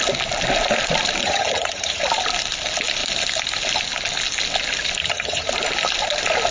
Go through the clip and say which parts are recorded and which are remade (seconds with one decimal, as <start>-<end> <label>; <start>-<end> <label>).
0.0-1.2 recorded; 1.2-2.0 remade; 2.0-5.0 recorded; 5.0-5.5 remade; 5.5-6.5 recorded